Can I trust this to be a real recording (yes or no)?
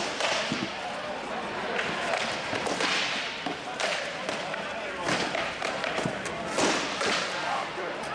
yes